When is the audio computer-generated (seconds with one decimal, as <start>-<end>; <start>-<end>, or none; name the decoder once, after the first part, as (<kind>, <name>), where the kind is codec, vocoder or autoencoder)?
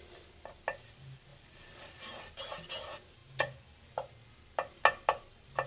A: none